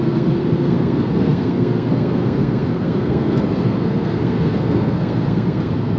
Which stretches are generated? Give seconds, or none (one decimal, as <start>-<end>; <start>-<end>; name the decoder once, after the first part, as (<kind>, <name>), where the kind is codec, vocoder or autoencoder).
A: 0.0-6.0 (codec, SNAC)